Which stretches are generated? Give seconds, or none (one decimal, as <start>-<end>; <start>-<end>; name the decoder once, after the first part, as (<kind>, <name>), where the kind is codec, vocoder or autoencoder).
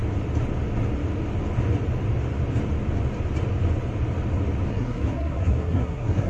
4.7-6.3 (codec, SNAC)